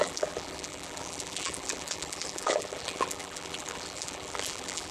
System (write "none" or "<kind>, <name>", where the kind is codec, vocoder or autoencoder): vocoder, BigVGAN v2